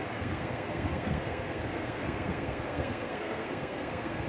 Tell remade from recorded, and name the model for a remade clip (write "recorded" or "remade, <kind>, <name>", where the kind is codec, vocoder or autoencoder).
remade, codec, SNAC